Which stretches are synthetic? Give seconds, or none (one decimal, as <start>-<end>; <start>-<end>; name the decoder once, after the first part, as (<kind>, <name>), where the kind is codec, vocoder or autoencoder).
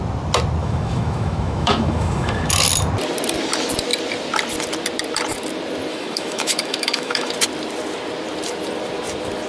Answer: 0.6-2.5 (autoencoder, DAC-VAE); 5.9-7.3